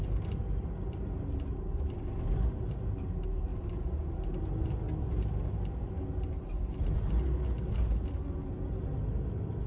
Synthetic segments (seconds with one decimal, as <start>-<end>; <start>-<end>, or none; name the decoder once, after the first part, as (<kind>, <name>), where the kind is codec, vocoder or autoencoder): none